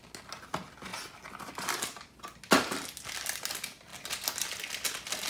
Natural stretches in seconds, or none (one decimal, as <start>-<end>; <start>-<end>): 0.0-5.3